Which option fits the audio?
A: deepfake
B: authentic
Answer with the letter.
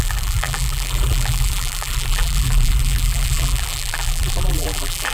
A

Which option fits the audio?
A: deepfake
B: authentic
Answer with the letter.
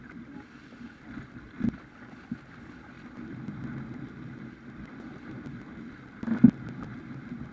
B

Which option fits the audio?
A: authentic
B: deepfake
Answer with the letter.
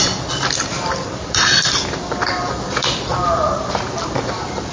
A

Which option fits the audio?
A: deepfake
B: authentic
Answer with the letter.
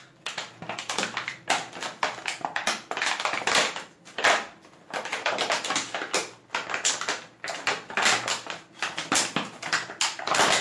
B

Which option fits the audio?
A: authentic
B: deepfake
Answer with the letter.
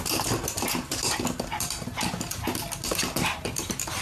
A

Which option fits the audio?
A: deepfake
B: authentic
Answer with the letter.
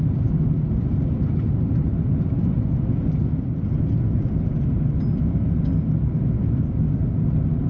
B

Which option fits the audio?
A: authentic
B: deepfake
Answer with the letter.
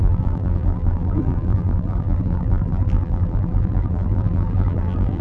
B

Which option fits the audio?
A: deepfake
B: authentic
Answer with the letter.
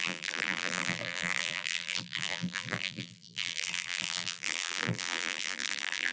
A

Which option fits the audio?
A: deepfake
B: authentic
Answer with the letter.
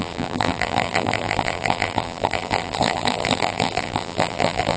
A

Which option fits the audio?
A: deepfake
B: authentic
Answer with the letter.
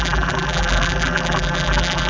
A